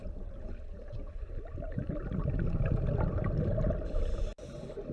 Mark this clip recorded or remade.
recorded